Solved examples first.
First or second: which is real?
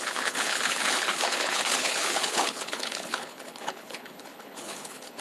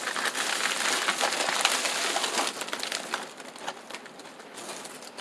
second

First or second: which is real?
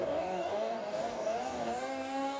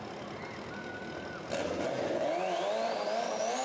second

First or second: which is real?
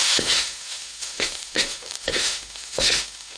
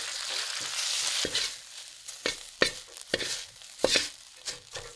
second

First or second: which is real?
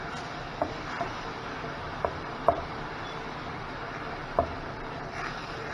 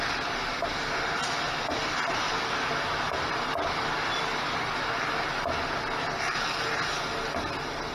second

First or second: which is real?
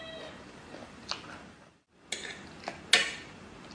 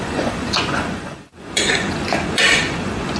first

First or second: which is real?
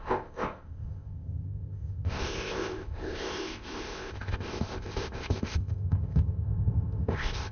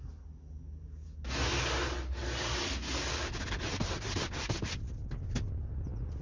second